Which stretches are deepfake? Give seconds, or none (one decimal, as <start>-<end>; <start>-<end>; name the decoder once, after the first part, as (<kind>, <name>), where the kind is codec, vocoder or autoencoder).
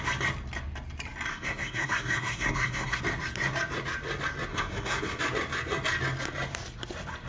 1.3-3.0 (codec, SNAC); 4.5-5.2